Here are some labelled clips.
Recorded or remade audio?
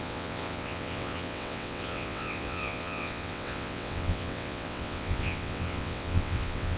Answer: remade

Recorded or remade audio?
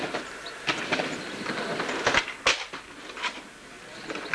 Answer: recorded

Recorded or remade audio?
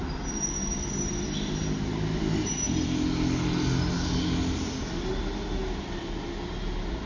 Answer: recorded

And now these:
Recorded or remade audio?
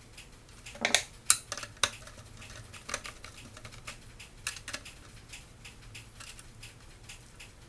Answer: recorded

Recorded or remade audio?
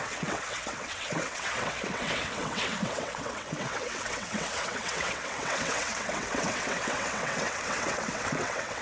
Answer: remade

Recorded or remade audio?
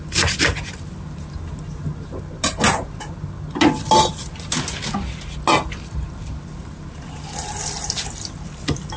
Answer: recorded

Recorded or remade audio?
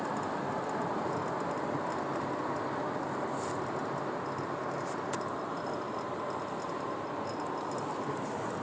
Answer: recorded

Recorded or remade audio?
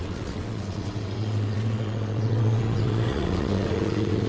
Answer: remade